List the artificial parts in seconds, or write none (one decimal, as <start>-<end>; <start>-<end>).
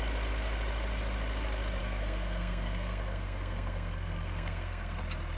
1.8-5.0